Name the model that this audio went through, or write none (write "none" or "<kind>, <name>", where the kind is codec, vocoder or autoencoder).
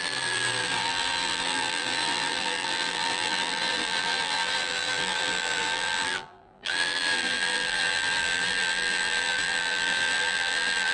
vocoder, BigVGAN v2